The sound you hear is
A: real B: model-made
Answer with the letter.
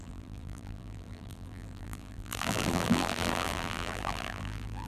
B